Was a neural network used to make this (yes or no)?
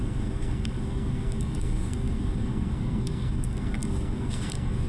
yes